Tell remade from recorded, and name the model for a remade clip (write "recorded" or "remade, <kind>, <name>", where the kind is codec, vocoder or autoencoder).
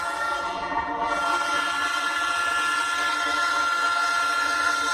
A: remade, vocoder, BigVGAN v2